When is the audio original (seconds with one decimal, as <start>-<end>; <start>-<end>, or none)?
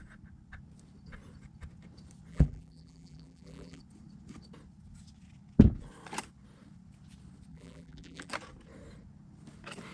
0.0-2.3; 3.8-7.5; 8.3-9.9